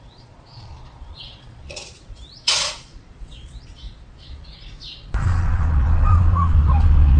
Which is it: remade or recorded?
remade